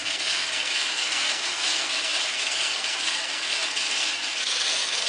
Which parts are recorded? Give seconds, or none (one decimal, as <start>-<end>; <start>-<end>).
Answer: none